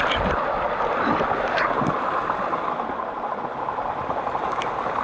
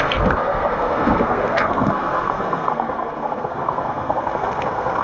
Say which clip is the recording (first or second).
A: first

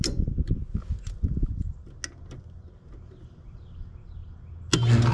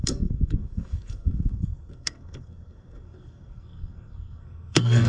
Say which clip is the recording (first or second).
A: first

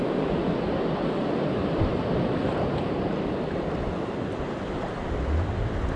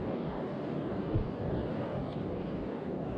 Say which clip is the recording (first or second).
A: first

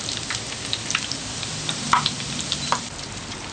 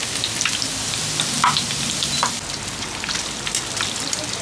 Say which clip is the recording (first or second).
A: second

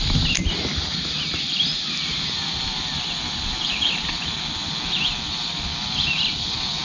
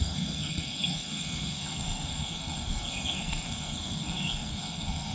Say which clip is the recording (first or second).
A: first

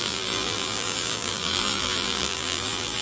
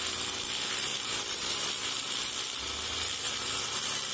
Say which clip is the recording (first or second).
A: second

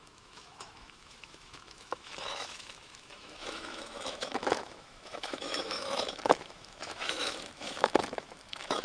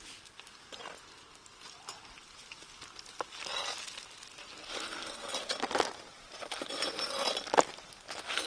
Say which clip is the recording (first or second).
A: second